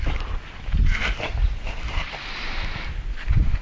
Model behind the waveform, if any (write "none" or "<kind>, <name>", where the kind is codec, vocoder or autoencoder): none